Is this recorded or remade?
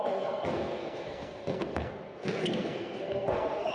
remade